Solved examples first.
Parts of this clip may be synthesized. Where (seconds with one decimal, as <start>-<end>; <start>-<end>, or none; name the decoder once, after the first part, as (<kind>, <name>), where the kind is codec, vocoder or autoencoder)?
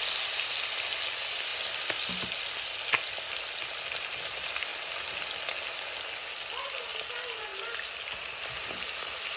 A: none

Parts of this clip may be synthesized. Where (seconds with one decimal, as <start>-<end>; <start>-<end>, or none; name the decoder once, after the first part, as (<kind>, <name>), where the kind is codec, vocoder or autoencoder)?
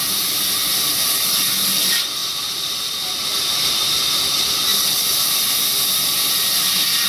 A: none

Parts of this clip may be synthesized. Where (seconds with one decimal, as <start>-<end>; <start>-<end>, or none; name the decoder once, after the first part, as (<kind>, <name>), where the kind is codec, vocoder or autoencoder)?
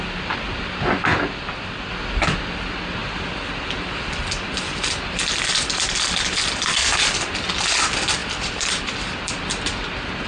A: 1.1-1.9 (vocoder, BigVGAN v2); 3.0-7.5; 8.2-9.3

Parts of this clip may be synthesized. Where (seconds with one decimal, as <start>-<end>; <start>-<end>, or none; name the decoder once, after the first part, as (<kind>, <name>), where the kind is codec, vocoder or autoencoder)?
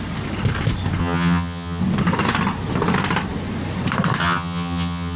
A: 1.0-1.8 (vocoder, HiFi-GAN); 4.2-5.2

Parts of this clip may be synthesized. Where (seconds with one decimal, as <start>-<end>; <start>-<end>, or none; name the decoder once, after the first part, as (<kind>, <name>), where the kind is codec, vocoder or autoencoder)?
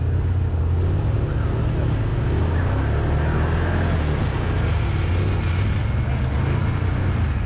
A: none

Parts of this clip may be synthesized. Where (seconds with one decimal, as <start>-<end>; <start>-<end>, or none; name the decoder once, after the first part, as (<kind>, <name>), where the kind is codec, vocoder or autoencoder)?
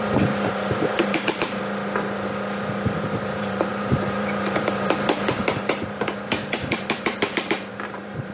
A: 0.0-1.6 (vocoder, BigVGAN v2); 3.2-8.3